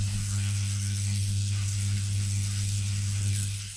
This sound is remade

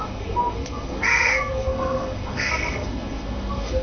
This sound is remade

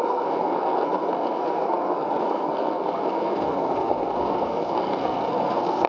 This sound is remade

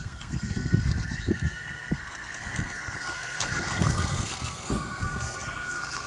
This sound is remade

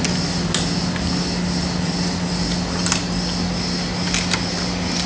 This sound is recorded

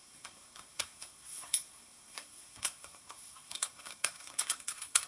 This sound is remade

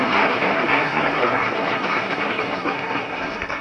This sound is remade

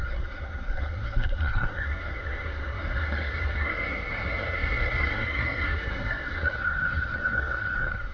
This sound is remade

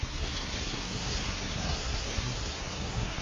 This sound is remade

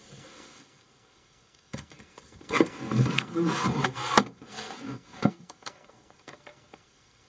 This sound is remade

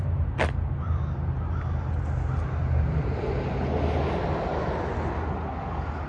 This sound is recorded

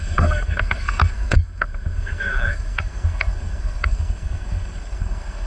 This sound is remade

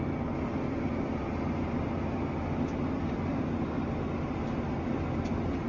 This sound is recorded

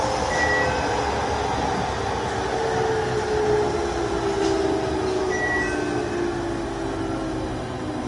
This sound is recorded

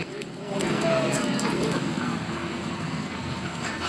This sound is remade